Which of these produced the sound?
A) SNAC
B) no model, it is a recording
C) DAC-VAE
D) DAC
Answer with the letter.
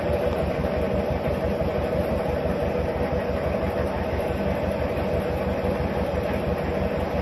B